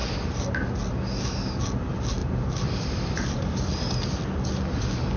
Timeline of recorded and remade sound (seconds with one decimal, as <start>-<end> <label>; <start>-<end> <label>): 0.0-2.2 recorded; 2.2-4.5 remade; 4.5-5.2 recorded